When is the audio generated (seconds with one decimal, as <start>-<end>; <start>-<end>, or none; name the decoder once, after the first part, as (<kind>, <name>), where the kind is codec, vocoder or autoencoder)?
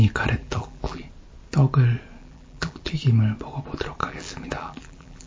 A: 0.4-1.0 (vocoder, BigVGAN v2); 2.2-2.9; 4.0-5.3